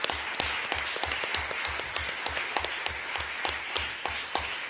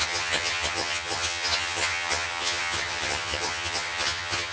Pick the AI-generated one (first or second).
second